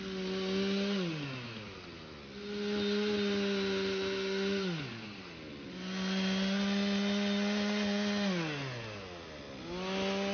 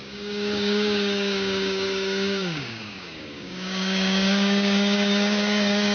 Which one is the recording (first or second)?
first